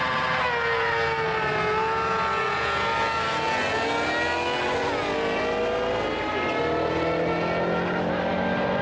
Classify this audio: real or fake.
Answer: real